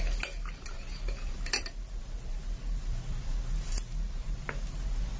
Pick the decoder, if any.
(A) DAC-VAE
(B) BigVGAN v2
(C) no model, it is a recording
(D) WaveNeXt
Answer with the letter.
C